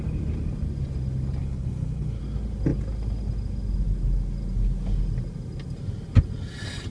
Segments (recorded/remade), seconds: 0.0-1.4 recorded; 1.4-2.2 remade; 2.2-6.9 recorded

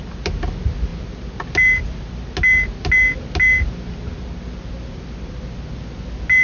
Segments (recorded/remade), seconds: 0.0-6.4 recorded

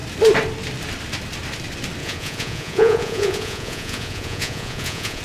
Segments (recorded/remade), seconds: 0.0-2.0 recorded; 2.0-5.2 remade

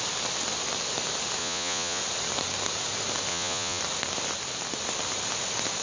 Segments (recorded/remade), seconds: 0.0-1.4 recorded; 1.4-2.0 remade; 2.0-3.3 recorded; 3.3-3.8 remade; 3.8-5.8 recorded

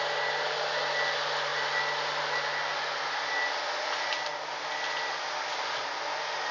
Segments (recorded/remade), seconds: 0.0-6.5 recorded